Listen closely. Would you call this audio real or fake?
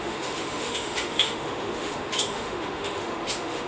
fake